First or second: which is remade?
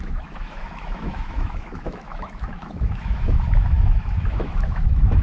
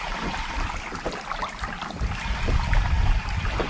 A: first